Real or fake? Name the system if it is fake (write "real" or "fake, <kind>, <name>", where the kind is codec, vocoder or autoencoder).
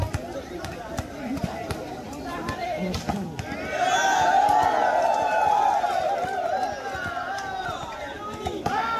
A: real